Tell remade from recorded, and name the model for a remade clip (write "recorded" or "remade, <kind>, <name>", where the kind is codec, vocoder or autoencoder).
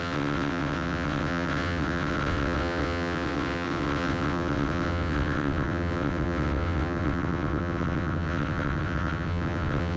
remade, vocoder, WaveNeXt